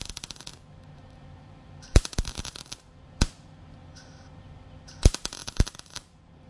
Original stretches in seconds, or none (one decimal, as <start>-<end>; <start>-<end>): none